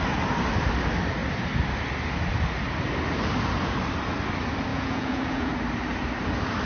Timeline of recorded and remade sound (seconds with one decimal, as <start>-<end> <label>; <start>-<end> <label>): 0.0-4.7 recorded; 4.7-5.5 remade; 5.5-6.7 recorded